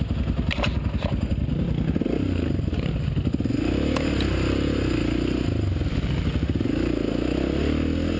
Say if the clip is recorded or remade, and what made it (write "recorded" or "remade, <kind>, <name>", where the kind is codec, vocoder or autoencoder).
recorded